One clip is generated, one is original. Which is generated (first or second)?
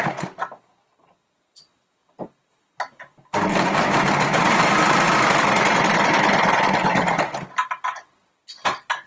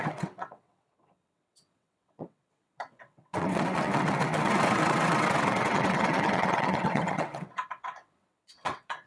second